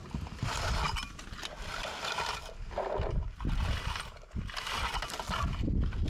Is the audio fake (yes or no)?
no